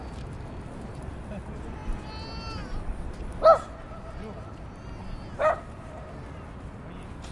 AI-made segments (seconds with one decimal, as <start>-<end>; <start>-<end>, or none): none